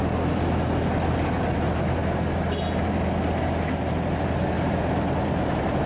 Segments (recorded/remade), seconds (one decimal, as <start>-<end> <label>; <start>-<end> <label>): 0.0-5.9 recorded